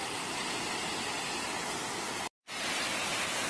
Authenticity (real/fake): real